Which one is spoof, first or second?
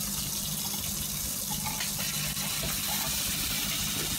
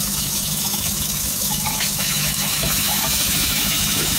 second